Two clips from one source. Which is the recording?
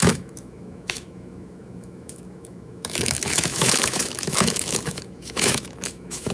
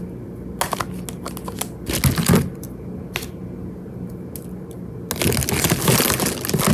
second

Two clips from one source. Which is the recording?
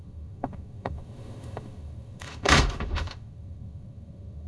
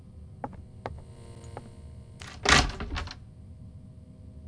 second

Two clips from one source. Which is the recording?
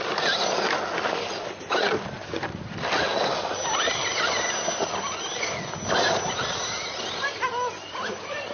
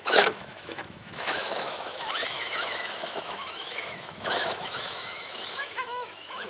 first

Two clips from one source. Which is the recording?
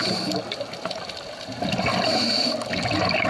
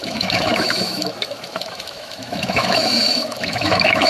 first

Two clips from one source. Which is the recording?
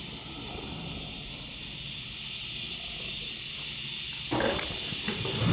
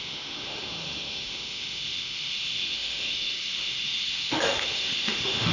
first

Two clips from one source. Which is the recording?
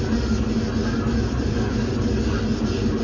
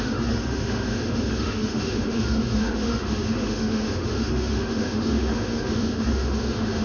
first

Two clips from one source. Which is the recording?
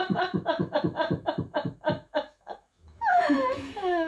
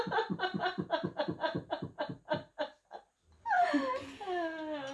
second